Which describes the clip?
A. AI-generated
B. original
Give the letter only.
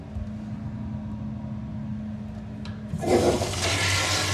B